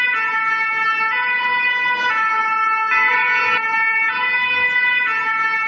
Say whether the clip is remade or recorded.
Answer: recorded